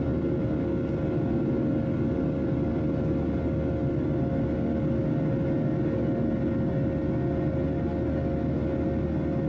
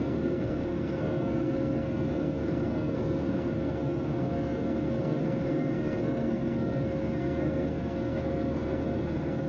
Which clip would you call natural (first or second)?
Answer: first